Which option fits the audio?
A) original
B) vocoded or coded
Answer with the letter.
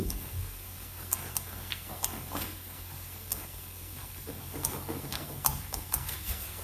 B